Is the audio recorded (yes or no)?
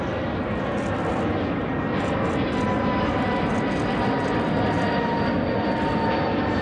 yes